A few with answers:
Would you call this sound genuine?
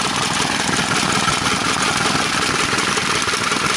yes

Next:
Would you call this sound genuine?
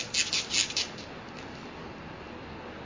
yes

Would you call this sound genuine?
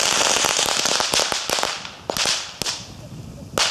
yes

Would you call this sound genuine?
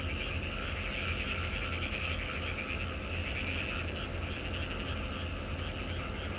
yes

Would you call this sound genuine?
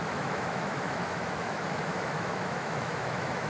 no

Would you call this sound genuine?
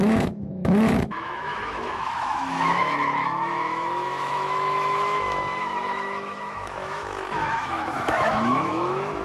no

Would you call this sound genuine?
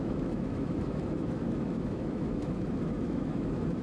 no